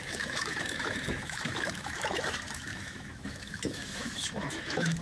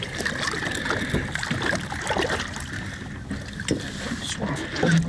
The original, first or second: second